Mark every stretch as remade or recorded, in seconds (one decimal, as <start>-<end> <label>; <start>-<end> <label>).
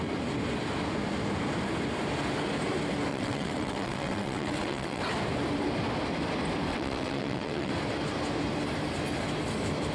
0.0-3.1 recorded; 3.1-5.0 remade; 5.0-6.7 recorded; 6.7-7.7 remade; 7.7-9.9 recorded